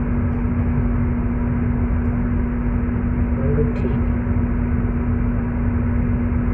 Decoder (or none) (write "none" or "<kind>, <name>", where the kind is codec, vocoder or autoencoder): none